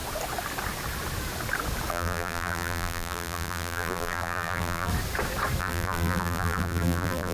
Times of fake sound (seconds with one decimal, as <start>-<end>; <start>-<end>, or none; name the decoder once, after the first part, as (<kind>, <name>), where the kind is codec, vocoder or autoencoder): 1.9-4.9 (vocoder, BigVGAN v2); 5.6-7.3